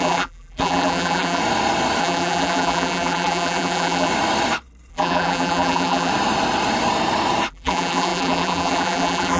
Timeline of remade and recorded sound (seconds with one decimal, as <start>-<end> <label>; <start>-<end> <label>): 0.0-1.4 remade; 1.4-2.0 recorded; 2.0-4.1 remade; 4.1-4.9 recorded; 4.9-6.1 remade; 6.1-7.5 recorded; 7.5-9.4 remade